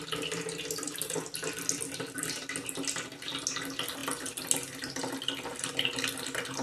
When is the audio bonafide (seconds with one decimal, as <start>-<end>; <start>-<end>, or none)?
0.0-6.6